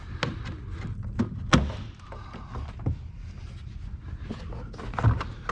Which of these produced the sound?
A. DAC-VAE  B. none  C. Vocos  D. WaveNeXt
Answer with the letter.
B